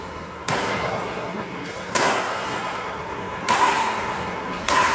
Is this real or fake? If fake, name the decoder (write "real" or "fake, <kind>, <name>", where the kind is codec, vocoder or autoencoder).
fake, codec, SNAC